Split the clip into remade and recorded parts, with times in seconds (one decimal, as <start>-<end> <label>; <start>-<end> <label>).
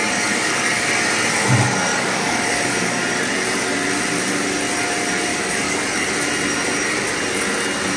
0.0-0.9 remade; 0.9-1.9 recorded; 1.9-3.0 remade; 3.0-5.3 recorded; 5.3-6.1 remade; 6.1-8.0 recorded